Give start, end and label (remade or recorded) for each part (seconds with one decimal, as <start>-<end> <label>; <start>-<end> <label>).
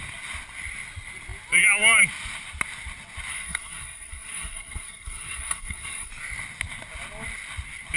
0.0-3.3 recorded; 3.3-6.1 remade; 6.1-8.0 recorded